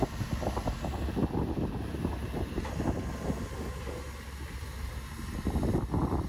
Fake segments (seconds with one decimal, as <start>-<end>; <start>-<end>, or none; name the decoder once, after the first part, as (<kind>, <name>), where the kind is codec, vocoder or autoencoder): none